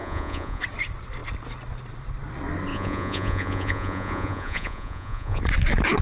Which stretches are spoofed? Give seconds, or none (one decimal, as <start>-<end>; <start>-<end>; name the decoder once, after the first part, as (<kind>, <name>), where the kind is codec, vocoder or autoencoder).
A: 0.0-0.6 (vocoder, Vocos); 2.7-5.4